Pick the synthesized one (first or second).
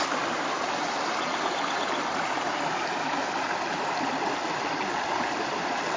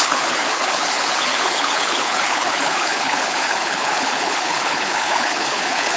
second